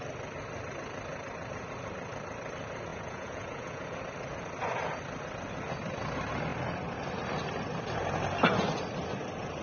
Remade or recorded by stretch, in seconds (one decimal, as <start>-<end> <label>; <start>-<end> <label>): 0.0-2.9 recorded; 2.9-4.0 remade; 4.0-9.6 recorded